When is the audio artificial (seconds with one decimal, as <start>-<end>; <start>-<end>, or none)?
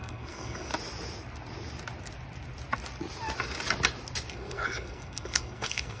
0.0-0.7; 4.3-6.0